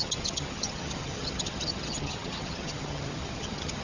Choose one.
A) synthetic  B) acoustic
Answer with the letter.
A